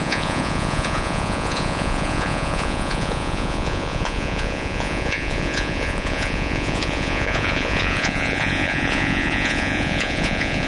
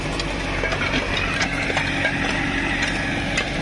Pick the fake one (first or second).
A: first